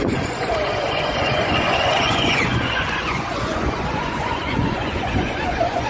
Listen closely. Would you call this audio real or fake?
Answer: fake